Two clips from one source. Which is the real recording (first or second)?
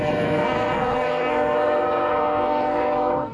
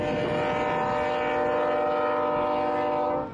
second